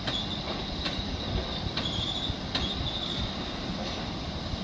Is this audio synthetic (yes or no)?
no